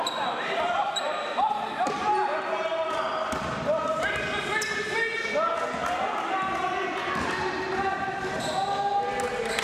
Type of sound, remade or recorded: recorded